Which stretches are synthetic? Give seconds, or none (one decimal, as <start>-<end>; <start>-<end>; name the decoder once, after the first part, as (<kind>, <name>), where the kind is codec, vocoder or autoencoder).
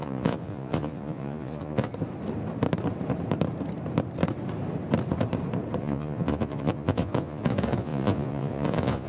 0.0-1.9 (vocoder, Vocos); 5.8-9.1